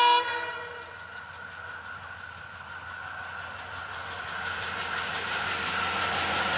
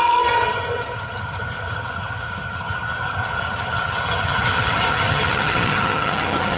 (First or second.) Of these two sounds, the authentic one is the first